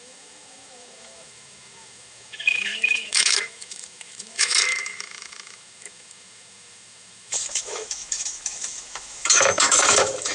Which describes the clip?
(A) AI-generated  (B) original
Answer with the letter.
A